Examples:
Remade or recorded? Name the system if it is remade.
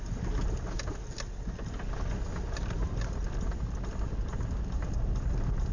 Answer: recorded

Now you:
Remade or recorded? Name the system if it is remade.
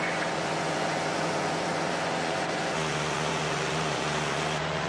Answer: remade, vocoder, Vocos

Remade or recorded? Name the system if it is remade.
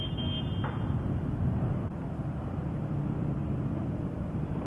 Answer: recorded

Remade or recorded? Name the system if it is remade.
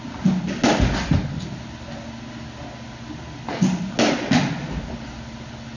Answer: recorded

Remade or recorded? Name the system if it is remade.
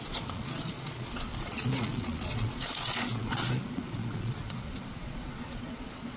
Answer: remade, vocoder, Vocos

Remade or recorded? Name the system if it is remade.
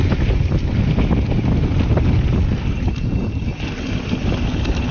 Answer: recorded